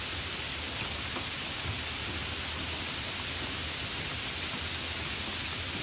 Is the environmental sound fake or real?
real